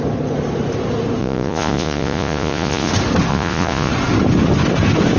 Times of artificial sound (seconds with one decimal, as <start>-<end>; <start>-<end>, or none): 1.2-2.9; 3.3-3.9